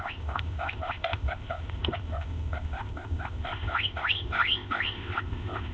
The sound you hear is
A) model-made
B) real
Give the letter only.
A